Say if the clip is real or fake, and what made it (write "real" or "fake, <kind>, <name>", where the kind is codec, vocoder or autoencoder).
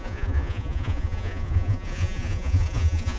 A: fake, vocoder, Vocos